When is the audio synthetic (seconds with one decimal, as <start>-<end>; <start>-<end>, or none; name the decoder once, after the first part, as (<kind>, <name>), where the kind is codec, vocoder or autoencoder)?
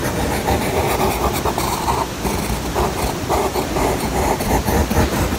none